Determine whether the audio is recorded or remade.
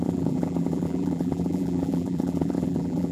remade